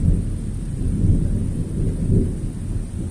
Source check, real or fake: real